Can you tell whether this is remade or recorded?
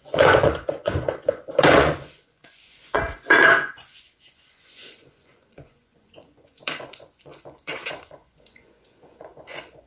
remade